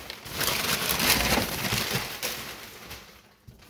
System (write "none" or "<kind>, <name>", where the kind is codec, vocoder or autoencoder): none